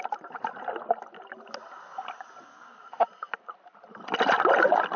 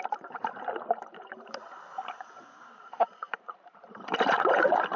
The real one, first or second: first